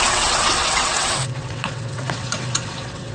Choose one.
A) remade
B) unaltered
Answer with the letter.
A